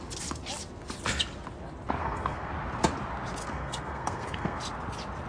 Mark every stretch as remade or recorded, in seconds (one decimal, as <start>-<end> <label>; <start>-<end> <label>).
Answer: 0.0-2.0 recorded; 2.0-2.5 remade; 2.5-3.4 recorded; 3.4-4.6 remade; 4.6-5.3 recorded